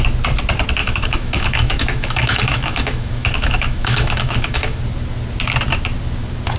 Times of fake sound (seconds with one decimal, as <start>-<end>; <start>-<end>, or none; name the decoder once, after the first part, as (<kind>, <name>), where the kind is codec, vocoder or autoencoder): 0.8-4.8 (autoencoder, DAC-VAE)